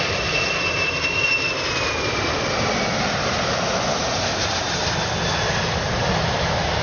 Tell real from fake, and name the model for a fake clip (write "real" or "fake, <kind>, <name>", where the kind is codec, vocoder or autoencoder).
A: real